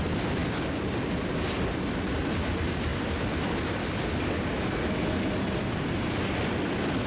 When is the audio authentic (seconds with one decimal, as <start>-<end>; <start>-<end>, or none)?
0.0-7.1